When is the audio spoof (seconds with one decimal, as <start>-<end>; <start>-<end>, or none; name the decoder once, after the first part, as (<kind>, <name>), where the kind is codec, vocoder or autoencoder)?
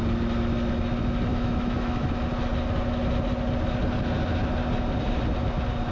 1.3-2.1 (autoencoder, DAC-VAE)